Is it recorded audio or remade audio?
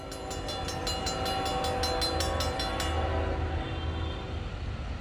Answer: recorded